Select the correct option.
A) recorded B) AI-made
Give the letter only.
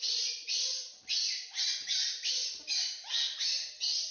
A